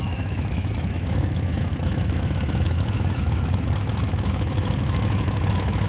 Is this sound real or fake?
fake